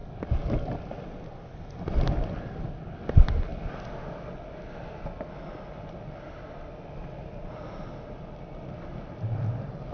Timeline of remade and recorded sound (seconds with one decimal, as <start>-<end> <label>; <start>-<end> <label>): 0.0-9.9 recorded